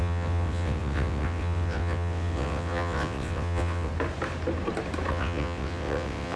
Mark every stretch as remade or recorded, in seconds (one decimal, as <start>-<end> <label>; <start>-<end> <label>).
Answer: 0.0-3.9 remade; 3.9-5.1 recorded; 5.1-6.4 remade